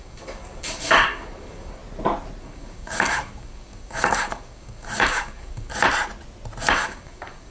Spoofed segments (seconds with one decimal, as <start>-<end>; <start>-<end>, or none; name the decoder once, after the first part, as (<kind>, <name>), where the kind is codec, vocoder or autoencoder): 0.0-1.8 (codec, DAC); 2.4-5.7; 6.7-7.5